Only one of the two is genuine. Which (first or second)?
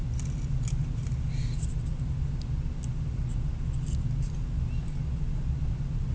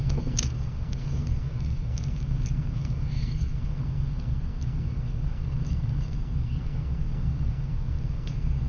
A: first